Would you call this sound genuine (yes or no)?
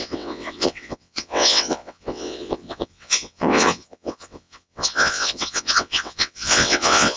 no